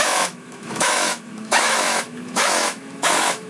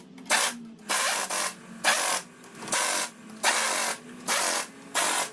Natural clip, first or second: second